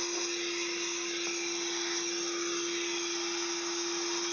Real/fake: real